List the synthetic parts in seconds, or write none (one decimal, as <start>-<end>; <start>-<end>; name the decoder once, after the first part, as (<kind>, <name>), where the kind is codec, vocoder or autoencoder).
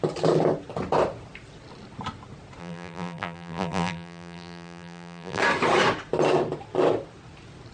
2.6-5.4 (vocoder, BigVGAN v2)